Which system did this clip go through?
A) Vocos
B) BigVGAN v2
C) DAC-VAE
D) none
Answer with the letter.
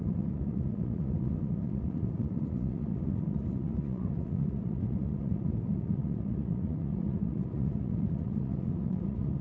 A